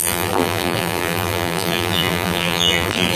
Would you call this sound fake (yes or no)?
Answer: yes